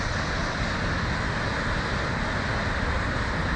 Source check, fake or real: real